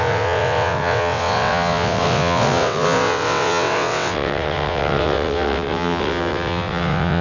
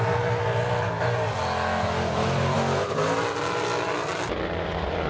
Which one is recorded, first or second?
second